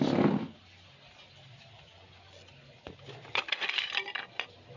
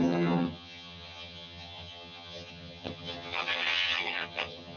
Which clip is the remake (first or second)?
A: second